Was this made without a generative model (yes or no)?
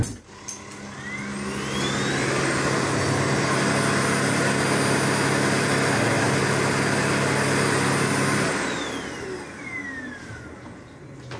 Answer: yes